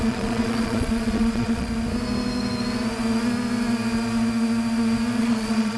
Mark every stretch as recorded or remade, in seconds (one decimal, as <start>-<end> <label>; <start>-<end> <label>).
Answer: 0.0-1.7 remade; 1.7-5.2 recorded; 5.2-5.8 remade